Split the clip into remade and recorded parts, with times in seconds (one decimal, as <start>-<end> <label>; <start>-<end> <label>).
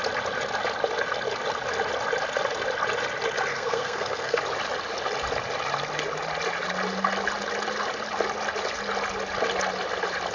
0.0-3.5 recorded; 3.5-4.4 remade; 4.4-10.3 recorded